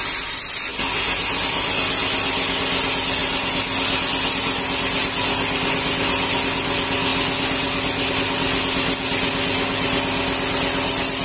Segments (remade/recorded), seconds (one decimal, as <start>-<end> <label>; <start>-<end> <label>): 0.0-11.2 recorded